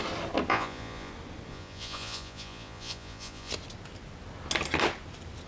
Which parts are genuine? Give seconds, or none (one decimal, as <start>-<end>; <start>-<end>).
0.0-0.5; 1.1-1.5; 3.5-5.5